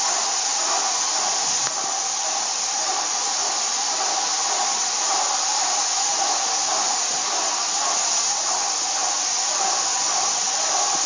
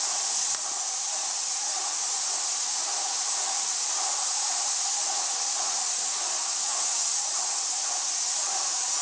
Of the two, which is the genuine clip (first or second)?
first